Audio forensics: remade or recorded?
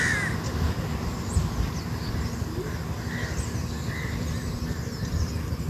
recorded